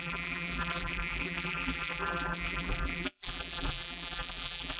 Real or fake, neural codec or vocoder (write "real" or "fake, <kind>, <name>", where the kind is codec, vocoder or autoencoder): fake, vocoder, BigVGAN v2